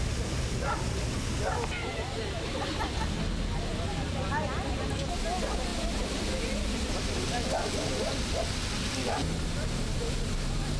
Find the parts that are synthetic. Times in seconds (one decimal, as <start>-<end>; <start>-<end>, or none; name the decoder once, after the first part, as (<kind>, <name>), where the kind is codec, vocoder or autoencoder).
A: none